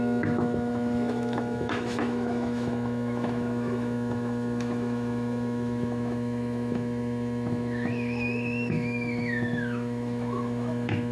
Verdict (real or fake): fake